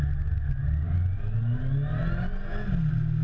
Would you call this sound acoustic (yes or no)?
yes